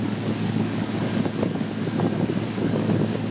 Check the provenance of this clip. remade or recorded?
remade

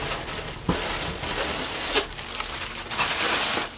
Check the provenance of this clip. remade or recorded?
recorded